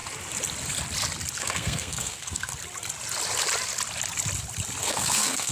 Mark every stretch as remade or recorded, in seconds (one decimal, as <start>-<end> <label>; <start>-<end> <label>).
0.0-1.4 recorded; 1.4-2.5 remade; 2.5-4.8 recorded; 4.8-5.5 remade